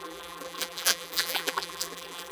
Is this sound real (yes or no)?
no